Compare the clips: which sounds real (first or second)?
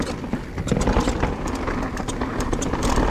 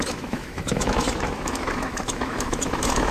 first